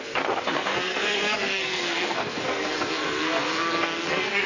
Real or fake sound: fake